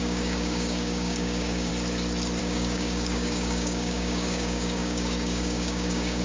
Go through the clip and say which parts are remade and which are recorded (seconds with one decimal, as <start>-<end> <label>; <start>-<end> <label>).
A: 0.0-1.7 remade; 1.7-2.4 recorded; 2.4-6.2 remade